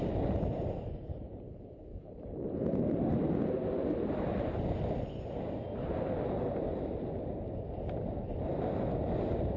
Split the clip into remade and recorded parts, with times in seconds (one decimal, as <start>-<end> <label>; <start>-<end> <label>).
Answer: 0.0-1.9 recorded; 1.9-3.1 remade; 3.1-9.6 recorded